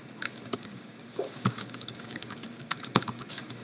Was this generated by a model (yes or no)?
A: yes